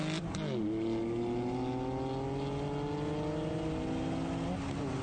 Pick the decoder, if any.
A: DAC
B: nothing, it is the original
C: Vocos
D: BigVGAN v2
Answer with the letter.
B